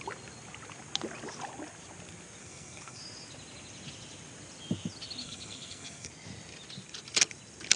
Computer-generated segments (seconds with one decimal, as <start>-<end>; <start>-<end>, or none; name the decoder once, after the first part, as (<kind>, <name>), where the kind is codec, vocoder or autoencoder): 2.4-3.0 (codec, SNAC); 5.2-6.1